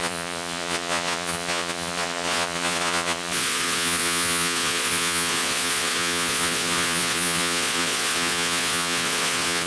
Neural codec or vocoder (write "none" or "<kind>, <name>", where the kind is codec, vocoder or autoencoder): vocoder, Vocos